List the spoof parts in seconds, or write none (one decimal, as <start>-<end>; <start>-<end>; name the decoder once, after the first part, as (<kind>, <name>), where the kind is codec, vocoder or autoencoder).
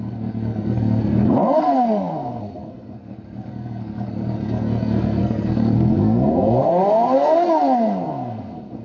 0.0-8.8 (codec, SNAC)